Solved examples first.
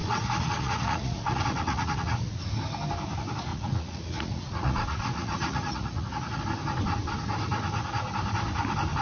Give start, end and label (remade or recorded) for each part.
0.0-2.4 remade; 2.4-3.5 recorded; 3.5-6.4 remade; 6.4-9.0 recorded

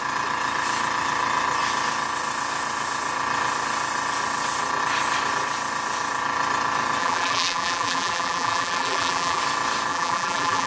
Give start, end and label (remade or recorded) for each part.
0.0-7.0 recorded; 7.0-9.4 remade; 9.4-9.9 recorded; 9.9-10.7 remade

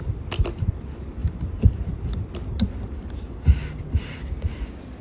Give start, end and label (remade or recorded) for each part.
0.0-5.0 recorded

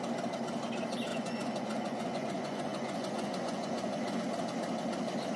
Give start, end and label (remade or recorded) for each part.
0.0-1.1 recorded; 1.1-4.2 remade; 4.2-5.4 recorded

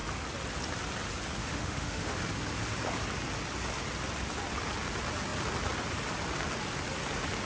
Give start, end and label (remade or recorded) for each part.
0.0-1.4 recorded; 1.4-2.2 remade; 2.2-7.5 recorded

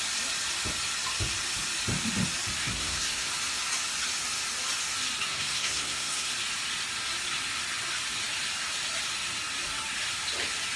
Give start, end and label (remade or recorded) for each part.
0.0-2.6 recorded; 2.6-3.3 remade; 3.3-5.3 recorded; 5.3-6.3 remade; 6.3-10.8 recorded